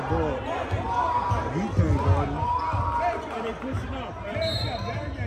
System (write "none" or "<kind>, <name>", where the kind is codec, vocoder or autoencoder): none